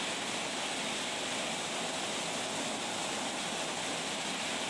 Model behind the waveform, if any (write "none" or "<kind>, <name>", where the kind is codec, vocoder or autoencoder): none